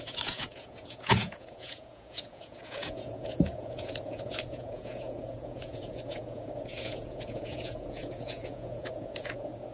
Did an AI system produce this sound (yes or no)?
yes